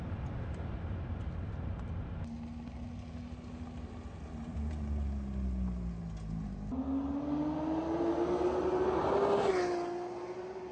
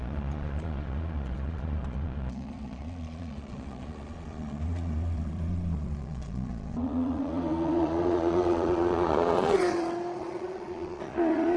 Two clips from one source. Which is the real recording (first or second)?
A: first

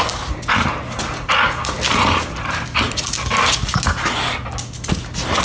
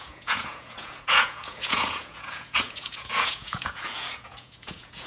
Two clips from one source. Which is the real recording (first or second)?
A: first